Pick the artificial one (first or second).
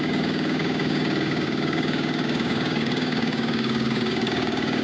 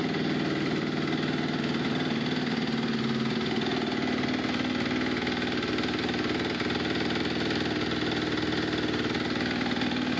first